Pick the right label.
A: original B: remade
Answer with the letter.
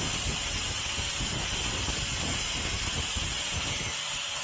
A